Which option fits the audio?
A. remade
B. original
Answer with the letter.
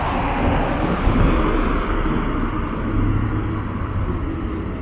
B